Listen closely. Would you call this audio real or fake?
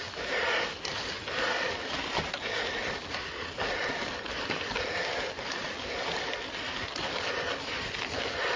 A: real